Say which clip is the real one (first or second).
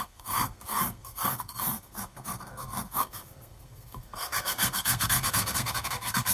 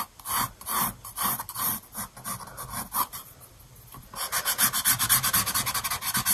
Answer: second